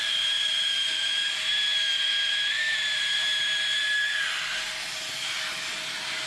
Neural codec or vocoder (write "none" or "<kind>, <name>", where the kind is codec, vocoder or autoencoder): none